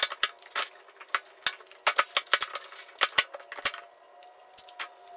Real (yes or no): yes